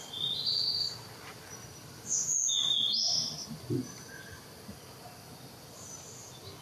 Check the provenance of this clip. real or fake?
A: real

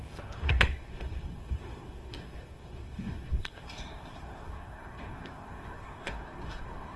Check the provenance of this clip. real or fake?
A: fake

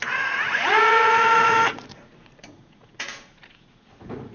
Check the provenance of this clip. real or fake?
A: fake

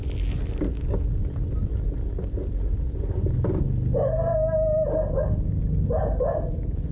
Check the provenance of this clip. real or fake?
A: real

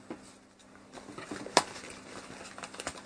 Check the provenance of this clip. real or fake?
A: real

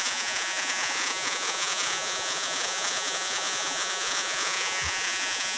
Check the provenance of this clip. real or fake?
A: fake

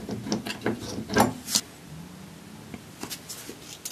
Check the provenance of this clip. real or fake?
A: real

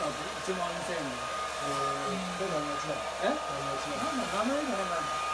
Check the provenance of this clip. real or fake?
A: real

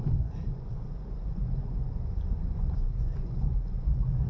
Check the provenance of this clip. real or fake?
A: fake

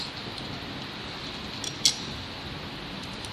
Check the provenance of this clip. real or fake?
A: real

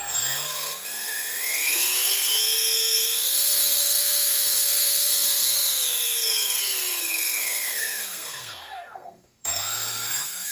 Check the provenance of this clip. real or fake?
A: fake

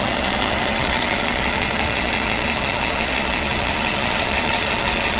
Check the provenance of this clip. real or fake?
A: fake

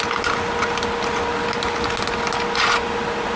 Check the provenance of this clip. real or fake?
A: real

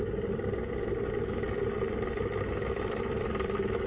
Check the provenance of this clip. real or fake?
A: real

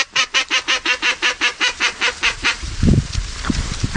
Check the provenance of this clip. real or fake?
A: fake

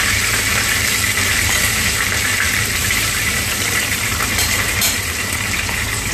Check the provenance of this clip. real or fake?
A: fake